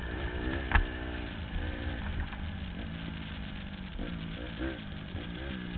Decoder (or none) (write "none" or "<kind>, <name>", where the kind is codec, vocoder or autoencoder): none